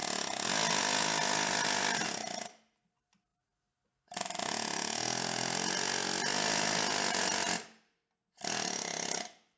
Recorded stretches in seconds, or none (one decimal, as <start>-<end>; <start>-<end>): 0.0-9.6